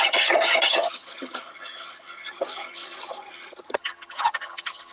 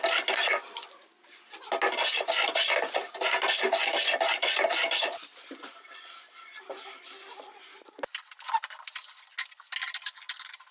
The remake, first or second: first